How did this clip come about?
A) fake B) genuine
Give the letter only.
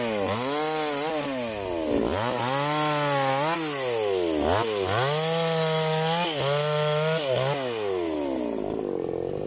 B